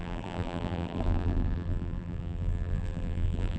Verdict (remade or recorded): remade